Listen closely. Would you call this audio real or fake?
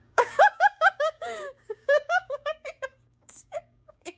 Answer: fake